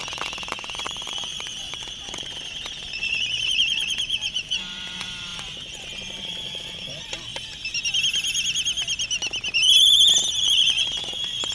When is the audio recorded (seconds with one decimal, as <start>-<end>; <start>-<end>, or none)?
7.3-10.4